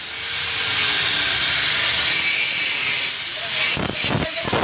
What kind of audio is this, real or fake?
real